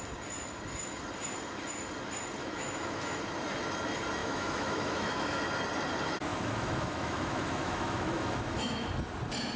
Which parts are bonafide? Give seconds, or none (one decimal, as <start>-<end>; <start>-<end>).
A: 0.0-2.4; 3.2-4.2; 5.4-6.3; 8.9-9.6

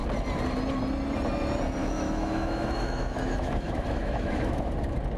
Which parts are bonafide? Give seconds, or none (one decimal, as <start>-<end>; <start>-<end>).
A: 0.0-1.8; 4.7-5.2